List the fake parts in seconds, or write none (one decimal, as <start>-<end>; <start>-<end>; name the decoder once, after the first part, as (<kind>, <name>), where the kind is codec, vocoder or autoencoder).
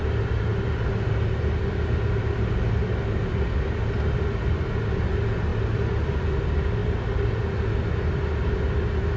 none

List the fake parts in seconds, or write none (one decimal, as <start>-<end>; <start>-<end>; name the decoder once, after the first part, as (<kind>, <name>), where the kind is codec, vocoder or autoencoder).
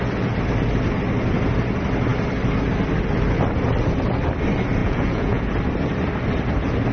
4.8-5.4 (vocoder, Vocos)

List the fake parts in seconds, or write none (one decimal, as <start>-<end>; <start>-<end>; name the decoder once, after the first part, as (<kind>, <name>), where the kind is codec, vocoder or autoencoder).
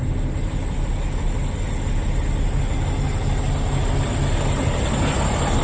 none